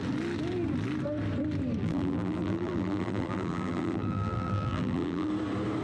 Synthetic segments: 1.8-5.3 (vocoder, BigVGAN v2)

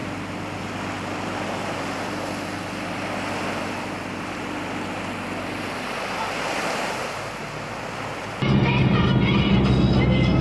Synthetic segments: none

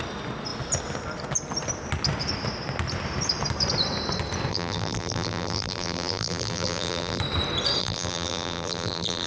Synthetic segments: 4.5-7.2 (vocoder, BigVGAN v2); 7.8-9.3

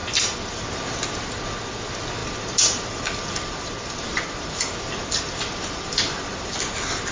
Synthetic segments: 0.0-0.8 (vocoder, BigVGAN v2); 2.2-6.5

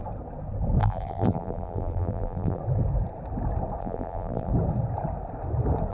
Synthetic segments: 0.8-2.6 (vocoder, BigVGAN v2); 3.8-4.5

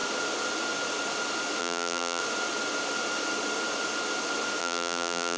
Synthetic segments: 1.6-2.2 (vocoder, BigVGAN v2); 4.6-5.4

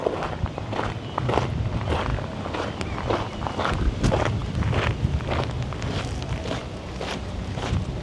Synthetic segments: 0.0-8.0 (vocoder, BigVGAN v2)